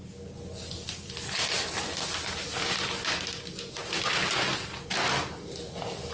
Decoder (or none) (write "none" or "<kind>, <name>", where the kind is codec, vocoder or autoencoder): none